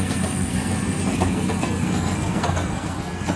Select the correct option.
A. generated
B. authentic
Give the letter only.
A